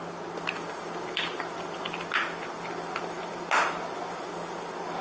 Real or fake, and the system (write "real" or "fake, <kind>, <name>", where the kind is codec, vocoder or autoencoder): real